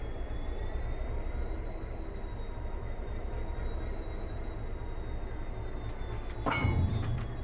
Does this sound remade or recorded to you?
recorded